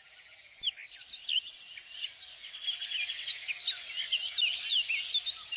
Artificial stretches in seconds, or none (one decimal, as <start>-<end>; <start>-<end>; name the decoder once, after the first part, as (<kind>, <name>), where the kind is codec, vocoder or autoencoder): 0.8-1.4 (vocoder, BigVGAN v2)

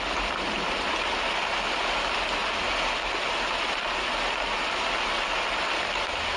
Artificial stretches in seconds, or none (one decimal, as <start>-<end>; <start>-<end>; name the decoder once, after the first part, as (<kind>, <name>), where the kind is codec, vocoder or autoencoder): none

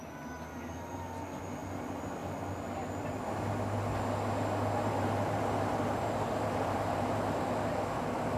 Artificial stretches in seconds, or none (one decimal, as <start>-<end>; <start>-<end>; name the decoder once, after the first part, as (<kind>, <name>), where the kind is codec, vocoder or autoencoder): 4.8-7.3 (vocoder, BigVGAN v2)

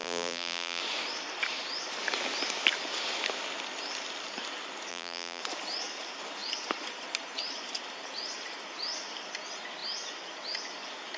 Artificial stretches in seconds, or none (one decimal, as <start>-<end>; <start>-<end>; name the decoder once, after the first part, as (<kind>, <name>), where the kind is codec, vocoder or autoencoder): 0.0-0.8 (vocoder, BigVGAN v2); 4.9-5.4

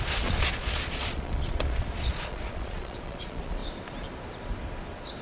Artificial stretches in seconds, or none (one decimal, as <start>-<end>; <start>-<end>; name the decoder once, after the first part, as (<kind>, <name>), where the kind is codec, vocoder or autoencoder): 0.0-3.6 (vocoder, Vocos)

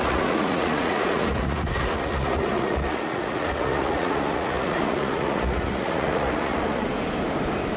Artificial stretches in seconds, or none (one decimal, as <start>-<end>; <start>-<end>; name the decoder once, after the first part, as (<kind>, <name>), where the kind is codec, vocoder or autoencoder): 0.0-6.9 (vocoder, Vocos)

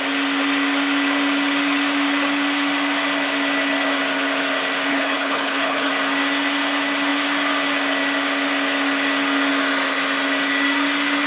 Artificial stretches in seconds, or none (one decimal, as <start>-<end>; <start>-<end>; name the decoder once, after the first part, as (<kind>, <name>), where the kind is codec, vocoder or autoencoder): 4.9-5.9 (codec, HILCodec)